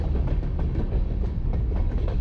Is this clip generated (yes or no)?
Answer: yes